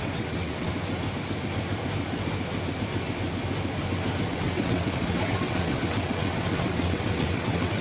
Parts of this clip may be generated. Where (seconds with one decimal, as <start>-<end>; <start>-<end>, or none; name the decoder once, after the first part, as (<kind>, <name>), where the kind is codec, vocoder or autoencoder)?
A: 0.0-0.7 (vocoder, WaveNeXt); 4.3-7.8